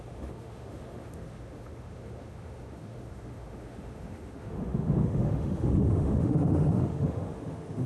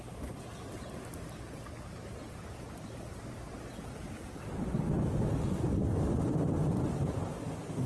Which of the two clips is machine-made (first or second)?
first